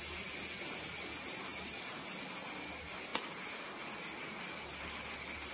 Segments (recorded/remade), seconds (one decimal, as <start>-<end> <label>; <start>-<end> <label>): 0.0-5.5 recorded